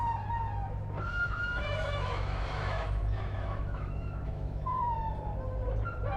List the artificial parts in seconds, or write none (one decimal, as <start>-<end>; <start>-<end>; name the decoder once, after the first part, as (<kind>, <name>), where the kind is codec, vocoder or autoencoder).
1.1-4.8 (autoencoder, DAC-VAE)